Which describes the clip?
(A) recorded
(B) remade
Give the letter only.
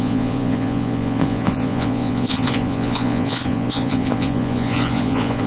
B